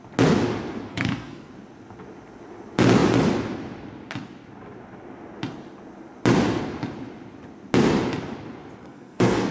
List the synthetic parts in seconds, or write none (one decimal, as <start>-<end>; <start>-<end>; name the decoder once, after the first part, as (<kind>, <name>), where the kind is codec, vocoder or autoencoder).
0.9-1.5 (codec, SNAC); 8.8-9.5